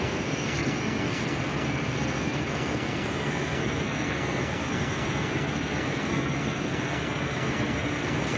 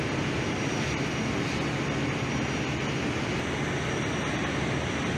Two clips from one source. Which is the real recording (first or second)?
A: second